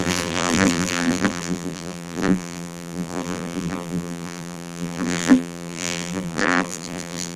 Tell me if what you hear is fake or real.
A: fake